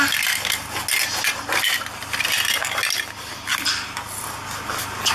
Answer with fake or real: real